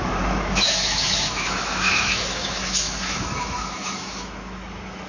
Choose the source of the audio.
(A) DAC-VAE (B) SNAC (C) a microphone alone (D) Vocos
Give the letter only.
A